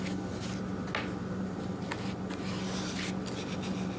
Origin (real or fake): real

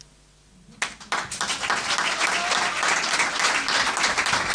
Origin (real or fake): real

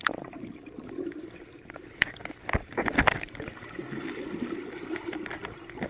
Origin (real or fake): real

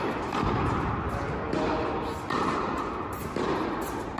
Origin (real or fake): real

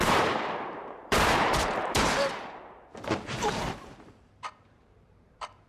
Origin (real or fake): fake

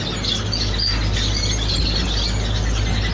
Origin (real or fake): real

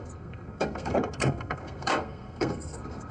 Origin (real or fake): fake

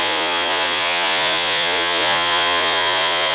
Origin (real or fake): fake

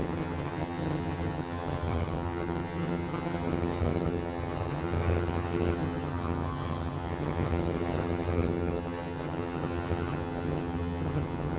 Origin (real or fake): fake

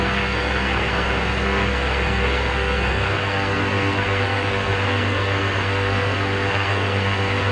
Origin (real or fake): fake